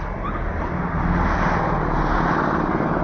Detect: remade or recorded recorded